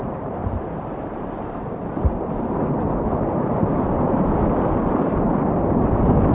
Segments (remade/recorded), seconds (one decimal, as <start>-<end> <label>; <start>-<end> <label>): 0.0-0.4 recorded; 0.4-2.1 remade; 2.1-6.3 recorded